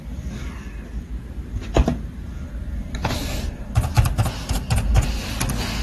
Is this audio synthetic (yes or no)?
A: no